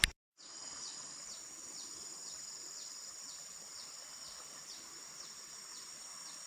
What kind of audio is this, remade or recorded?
remade